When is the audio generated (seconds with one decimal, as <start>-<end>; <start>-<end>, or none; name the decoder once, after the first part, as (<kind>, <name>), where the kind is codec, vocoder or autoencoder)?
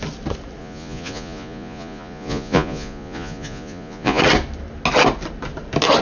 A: 0.6-4.2 (vocoder, Vocos)